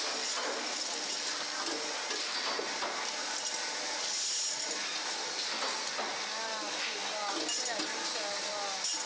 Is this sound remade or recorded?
recorded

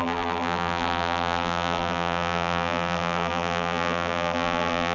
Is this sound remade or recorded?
remade